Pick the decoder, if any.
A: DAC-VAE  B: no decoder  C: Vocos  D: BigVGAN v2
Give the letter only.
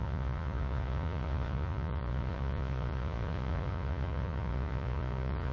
C